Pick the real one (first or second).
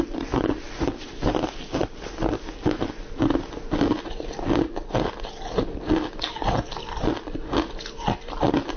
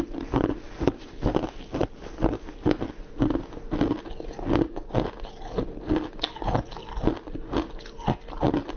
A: second